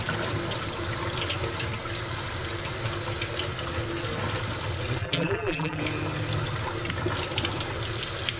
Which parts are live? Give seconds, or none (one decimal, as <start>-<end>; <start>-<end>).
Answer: 0.0-5.0; 5.8-8.4